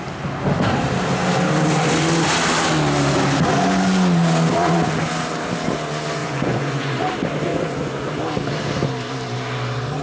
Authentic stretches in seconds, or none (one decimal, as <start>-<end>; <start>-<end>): 0.0-6.2; 6.9-7.5; 8.1-10.0